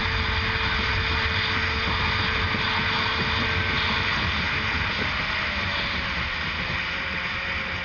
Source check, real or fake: real